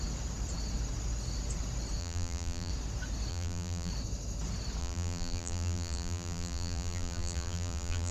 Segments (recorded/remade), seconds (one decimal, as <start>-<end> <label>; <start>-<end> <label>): 0.0-2.0 recorded; 2.0-2.7 remade; 2.7-3.3 recorded; 3.3-3.9 remade; 3.9-4.8 recorded; 4.8-8.1 remade